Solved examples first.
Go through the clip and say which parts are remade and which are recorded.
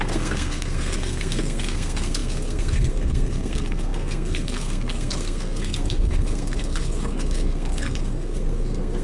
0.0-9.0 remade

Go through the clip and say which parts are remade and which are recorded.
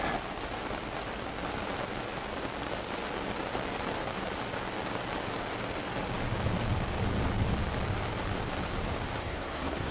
0.0-9.2 recorded; 9.2-9.9 remade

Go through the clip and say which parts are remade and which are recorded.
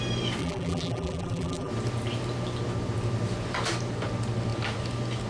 0.0-0.4 recorded; 0.4-1.7 remade; 1.7-5.3 recorded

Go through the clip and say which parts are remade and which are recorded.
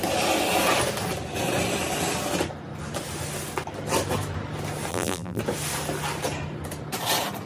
0.0-4.9 recorded; 4.9-5.4 remade; 5.4-7.5 recorded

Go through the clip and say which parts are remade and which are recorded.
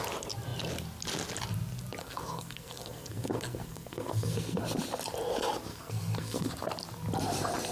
0.0-2.0 recorded; 2.0-4.6 remade; 4.6-5.7 recorded; 5.7-6.5 remade; 6.5-7.7 recorded